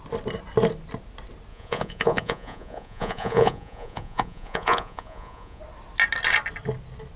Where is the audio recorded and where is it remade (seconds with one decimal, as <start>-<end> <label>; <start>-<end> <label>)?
0.0-1.5 recorded; 1.5-5.6 remade; 5.6-7.2 recorded